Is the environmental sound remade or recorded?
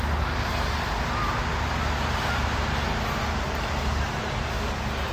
recorded